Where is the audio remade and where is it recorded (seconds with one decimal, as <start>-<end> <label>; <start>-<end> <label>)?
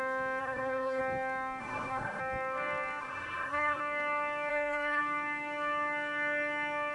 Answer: 0.0-0.4 recorded; 0.4-1.0 remade; 1.0-1.6 recorded; 1.6-2.2 remade; 2.2-3.0 recorded; 3.0-3.8 remade; 3.8-4.5 recorded; 4.5-5.0 remade; 5.0-6.9 recorded